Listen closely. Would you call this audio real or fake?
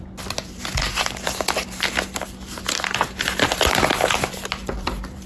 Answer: fake